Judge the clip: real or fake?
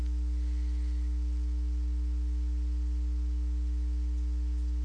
real